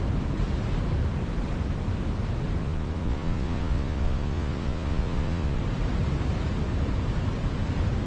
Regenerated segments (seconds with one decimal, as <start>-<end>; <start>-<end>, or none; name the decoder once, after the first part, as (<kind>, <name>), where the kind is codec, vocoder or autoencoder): 2.6-5.6 (vocoder, Vocos)